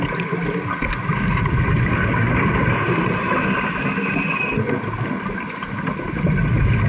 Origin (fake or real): real